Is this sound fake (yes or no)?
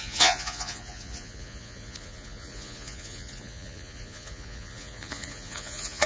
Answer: yes